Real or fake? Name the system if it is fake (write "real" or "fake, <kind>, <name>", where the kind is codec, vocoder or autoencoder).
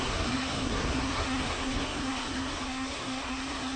fake, codec, SNAC